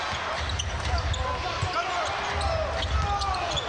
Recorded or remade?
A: recorded